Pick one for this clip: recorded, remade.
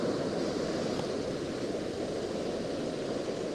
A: recorded